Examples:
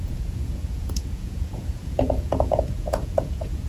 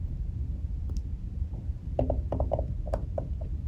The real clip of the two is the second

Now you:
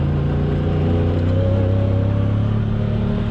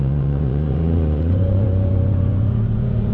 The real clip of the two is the first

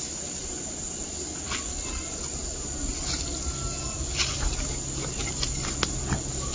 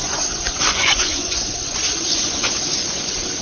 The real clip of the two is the first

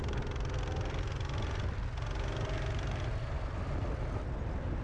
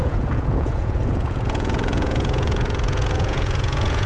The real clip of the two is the first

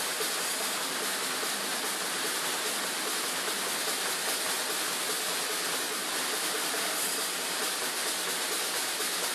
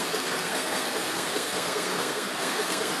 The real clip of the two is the first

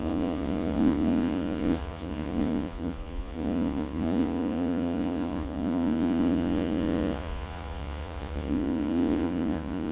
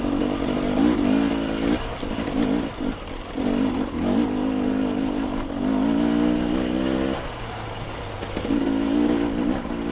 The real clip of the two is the second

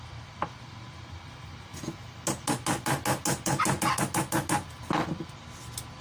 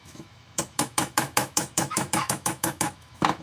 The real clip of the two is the first